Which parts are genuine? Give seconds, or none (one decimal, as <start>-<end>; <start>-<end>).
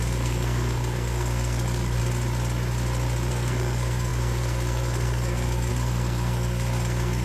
2.0-3.3